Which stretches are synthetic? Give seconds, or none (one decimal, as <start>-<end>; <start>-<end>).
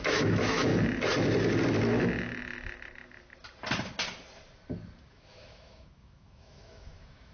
0.0-0.7; 5.1-7.3